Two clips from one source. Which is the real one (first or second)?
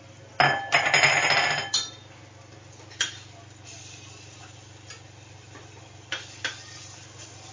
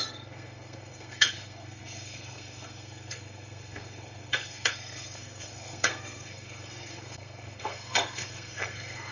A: first